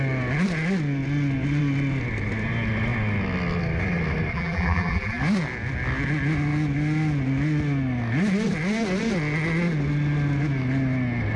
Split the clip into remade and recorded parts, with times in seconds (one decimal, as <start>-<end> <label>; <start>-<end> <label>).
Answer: 0.0-4.3 recorded; 4.3-5.2 remade; 5.2-11.4 recorded